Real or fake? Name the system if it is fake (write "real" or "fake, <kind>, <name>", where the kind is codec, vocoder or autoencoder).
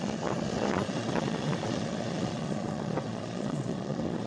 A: fake, vocoder, Vocos